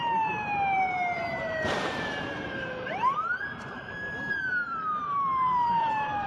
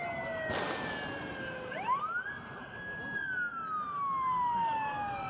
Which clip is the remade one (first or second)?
first